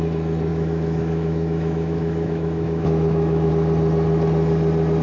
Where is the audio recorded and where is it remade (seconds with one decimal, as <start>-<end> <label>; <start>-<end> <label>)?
0.0-0.5 recorded; 0.5-3.5 remade; 3.5-5.0 recorded